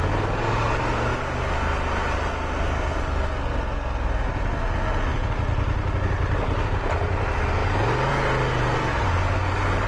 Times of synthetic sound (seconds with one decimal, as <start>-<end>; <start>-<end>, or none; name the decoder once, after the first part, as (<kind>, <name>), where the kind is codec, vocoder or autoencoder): none

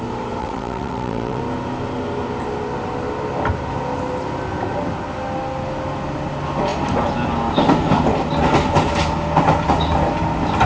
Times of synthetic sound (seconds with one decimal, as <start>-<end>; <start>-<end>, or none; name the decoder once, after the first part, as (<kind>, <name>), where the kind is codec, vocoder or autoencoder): 0.4-1.4 (vocoder, WaveNeXt)

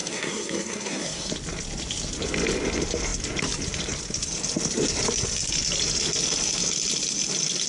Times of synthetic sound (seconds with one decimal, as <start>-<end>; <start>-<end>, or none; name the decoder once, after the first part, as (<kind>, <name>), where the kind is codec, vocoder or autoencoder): 0.0-1.3 (codec, SNAC)